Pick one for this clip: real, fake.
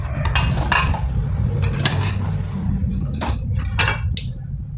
real